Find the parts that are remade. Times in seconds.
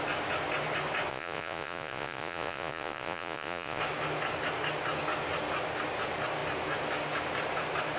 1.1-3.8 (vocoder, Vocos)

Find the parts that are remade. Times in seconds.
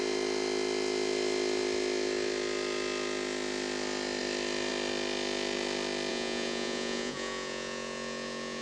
6.1-8.6 (vocoder, Vocos)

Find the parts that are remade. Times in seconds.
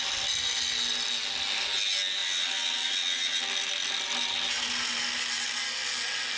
none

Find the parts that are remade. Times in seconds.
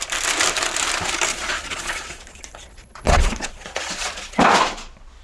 1.3-4.4 (vocoder, Vocos)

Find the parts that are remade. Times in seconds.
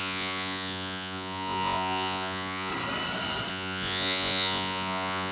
0.0-2.7 (vocoder, Vocos); 3.5-5.3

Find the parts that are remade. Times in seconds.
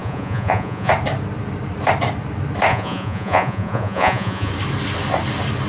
0.0-0.9 (vocoder, Vocos); 2.7-4.5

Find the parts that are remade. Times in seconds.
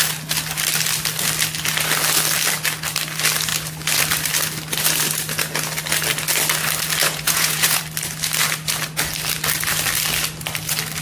7.0-7.8 (vocoder, Vocos)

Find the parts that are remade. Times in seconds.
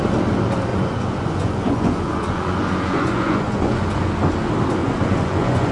0.7-4.1 (vocoder, Vocos); 4.8-5.7